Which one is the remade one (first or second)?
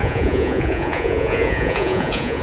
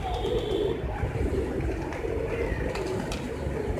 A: first